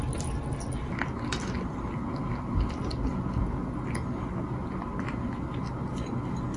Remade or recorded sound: recorded